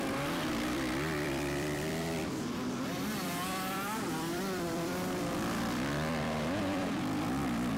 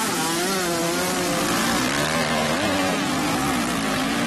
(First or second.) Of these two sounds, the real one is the second